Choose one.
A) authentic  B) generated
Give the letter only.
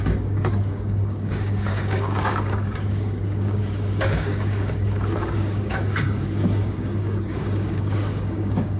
B